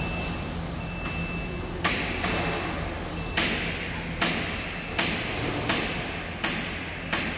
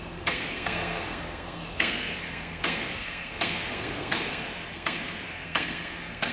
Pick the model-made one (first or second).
second